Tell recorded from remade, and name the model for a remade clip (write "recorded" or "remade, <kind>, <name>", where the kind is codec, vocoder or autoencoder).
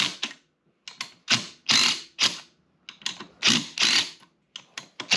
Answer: recorded